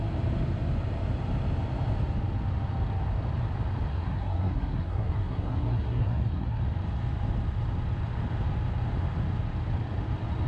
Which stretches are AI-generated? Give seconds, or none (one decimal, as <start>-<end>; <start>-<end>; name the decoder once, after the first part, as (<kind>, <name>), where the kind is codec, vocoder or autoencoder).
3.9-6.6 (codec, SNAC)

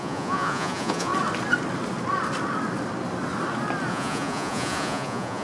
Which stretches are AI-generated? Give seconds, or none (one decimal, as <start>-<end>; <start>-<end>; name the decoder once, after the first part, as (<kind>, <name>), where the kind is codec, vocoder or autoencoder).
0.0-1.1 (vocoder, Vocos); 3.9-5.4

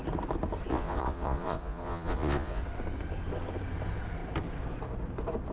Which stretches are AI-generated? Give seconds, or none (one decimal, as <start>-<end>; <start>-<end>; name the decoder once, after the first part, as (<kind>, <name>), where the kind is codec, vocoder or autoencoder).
0.7-2.6 (vocoder, Vocos)